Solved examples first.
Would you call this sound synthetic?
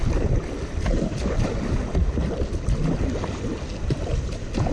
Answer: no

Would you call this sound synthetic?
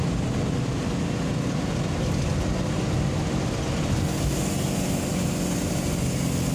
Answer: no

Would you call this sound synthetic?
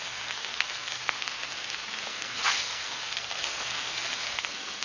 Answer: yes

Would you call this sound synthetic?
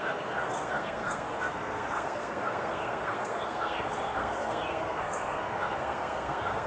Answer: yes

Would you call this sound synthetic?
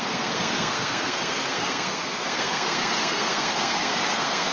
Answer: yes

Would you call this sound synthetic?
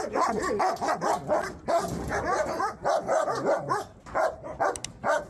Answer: no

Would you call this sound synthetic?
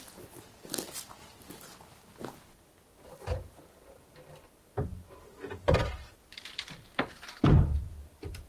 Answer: no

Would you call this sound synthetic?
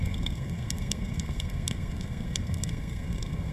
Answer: yes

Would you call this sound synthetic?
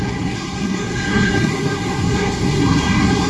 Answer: yes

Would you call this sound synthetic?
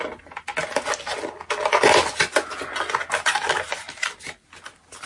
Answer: no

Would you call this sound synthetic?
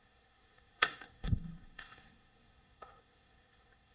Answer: yes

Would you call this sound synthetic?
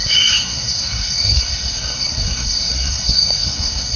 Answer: yes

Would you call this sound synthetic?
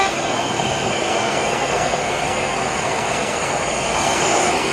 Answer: yes